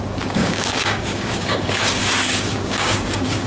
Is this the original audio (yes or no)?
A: no